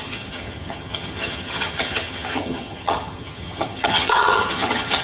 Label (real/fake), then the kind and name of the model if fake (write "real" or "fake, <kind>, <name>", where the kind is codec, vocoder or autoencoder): fake, vocoder, HiFi-GAN